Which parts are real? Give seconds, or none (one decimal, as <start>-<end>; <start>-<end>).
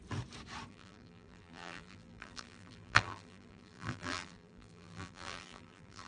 0.0-0.7